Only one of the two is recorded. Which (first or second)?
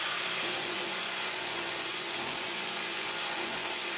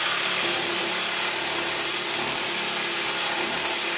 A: second